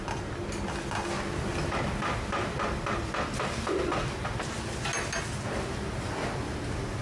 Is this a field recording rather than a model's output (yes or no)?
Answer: yes